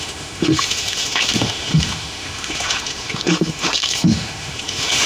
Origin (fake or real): fake